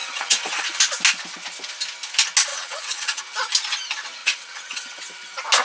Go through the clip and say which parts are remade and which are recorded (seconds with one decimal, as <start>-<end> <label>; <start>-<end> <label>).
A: 0.0-0.8 remade; 0.8-2.5 recorded; 2.5-3.2 remade; 3.2-4.2 recorded; 4.2-5.0 remade; 5.0-5.6 recorded